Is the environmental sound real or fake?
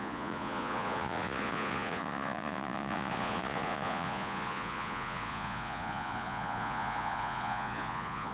fake